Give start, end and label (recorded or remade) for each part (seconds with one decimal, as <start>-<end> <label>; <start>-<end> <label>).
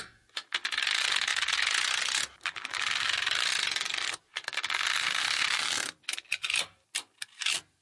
0.0-1.3 recorded; 1.3-2.0 remade; 2.0-7.8 recorded